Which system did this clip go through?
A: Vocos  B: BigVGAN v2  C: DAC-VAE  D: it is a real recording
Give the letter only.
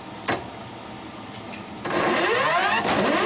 B